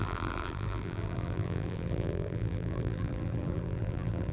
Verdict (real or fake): fake